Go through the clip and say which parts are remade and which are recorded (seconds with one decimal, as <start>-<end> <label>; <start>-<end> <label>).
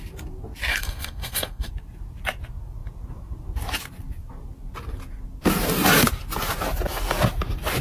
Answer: 0.0-0.7 recorded; 0.7-1.7 remade; 1.7-7.8 recorded